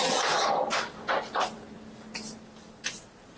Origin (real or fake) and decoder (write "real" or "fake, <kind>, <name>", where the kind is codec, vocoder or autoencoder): real